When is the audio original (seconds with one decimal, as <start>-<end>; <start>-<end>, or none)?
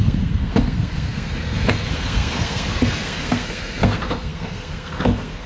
none